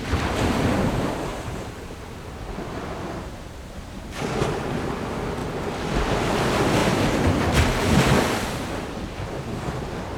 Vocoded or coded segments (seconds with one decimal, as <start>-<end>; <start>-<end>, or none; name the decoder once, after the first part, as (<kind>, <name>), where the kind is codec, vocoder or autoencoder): 1.3-4.6 (vocoder, BigVGAN v2); 6.8-7.4